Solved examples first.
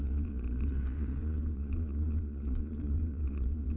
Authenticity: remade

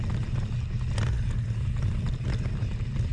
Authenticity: recorded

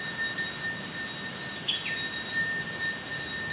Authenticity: recorded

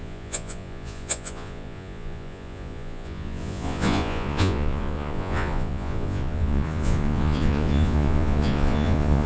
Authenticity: remade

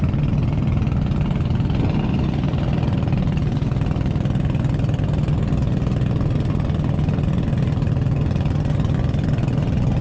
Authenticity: recorded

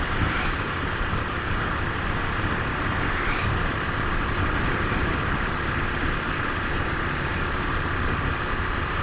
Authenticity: remade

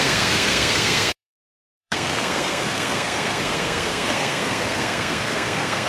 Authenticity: remade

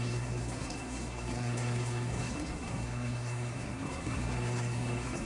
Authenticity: remade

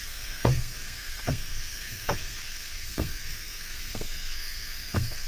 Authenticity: remade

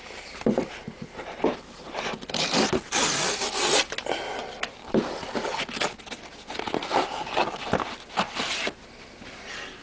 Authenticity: recorded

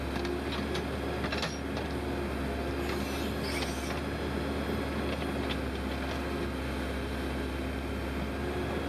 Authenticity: recorded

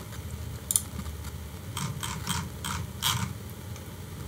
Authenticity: recorded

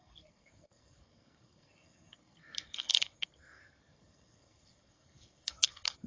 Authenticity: remade